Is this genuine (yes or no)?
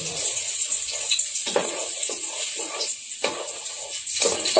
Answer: no